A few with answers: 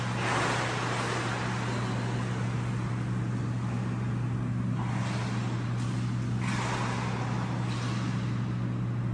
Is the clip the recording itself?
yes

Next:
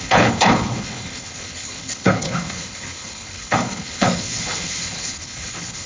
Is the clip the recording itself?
no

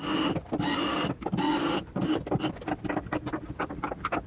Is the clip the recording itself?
yes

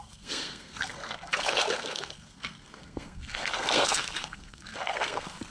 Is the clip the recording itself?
no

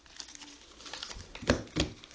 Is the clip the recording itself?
yes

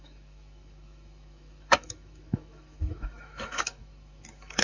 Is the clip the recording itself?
no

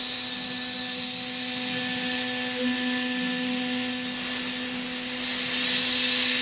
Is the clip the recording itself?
yes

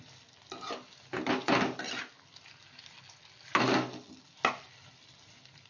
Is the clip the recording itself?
yes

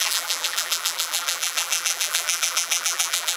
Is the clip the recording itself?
no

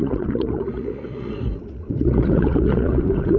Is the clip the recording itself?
no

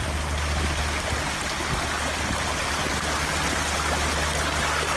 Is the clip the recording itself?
yes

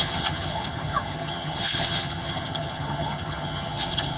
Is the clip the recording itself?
no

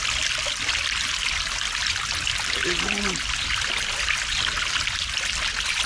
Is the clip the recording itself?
yes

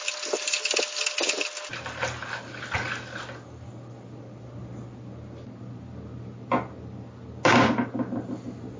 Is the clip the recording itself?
yes